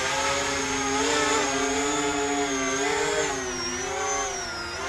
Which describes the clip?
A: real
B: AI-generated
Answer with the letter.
A